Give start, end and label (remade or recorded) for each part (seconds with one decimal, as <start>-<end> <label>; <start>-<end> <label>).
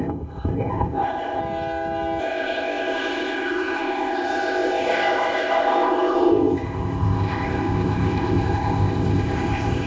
0.0-1.4 remade; 1.4-2.2 recorded; 2.2-9.9 remade